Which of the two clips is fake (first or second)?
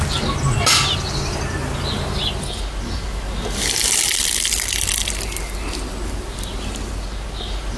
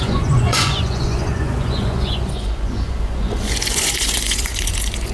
second